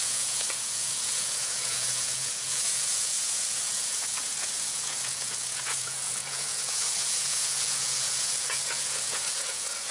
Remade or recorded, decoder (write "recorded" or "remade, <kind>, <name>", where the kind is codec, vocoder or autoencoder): remade, vocoder, Vocos